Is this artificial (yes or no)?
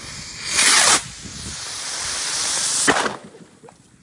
no